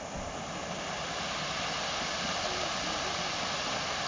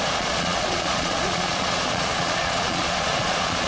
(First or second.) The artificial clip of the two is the second